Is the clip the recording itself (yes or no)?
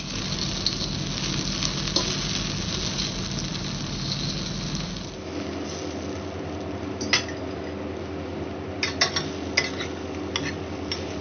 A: yes